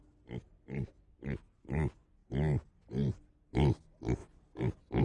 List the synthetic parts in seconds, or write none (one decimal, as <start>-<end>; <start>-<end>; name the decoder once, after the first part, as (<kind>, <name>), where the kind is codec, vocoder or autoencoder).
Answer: none